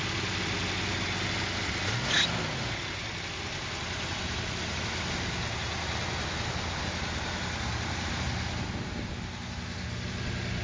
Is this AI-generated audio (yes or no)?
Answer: no